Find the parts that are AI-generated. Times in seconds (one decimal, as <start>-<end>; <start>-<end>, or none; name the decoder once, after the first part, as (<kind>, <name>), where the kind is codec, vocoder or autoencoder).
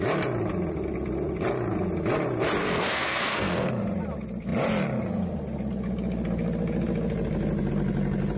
2.6-3.7 (codec, SNAC)